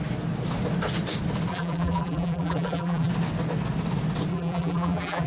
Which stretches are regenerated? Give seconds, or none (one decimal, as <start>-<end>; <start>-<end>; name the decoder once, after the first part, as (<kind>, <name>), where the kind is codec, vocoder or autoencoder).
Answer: 1.5-3.1 (vocoder, BigVGAN v2); 4.3-5.3